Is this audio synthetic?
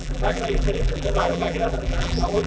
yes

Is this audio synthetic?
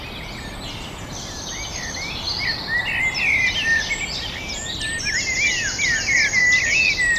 no